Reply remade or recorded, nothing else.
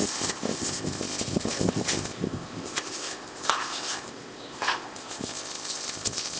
remade